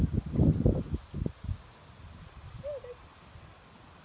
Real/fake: real